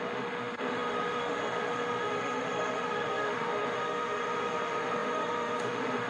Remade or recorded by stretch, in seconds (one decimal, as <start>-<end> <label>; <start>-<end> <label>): 0.0-6.1 remade